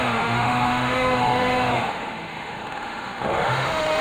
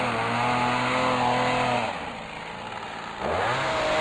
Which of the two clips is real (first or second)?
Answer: second